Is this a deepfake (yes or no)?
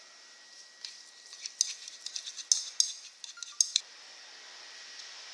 no